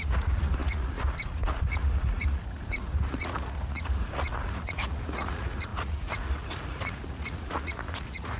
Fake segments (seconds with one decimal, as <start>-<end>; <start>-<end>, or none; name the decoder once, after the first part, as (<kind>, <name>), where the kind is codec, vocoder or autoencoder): 0.0-8.4 (vocoder, Vocos)